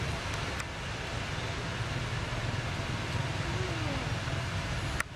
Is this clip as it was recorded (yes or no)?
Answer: yes